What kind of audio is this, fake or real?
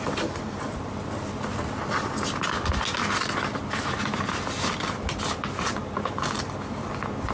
real